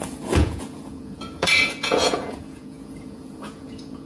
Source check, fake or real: fake